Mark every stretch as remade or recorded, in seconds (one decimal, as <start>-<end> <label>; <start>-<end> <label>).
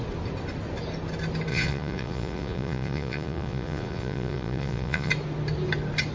0.0-1.5 recorded; 1.5-5.1 remade; 5.1-6.1 recorded